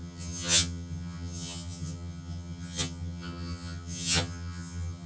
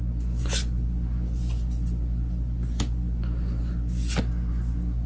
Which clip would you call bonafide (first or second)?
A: second